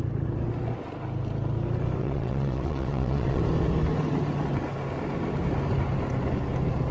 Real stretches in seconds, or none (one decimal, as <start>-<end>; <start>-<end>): 0.0-2.0; 3.4-6.9